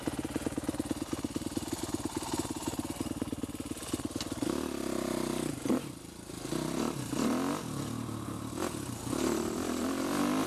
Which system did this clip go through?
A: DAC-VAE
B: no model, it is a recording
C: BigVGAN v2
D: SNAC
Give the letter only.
B